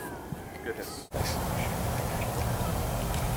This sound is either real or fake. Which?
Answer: real